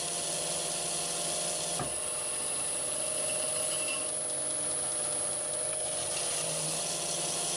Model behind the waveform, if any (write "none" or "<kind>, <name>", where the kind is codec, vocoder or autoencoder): none